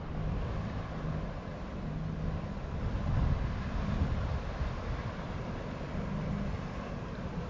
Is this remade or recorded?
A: recorded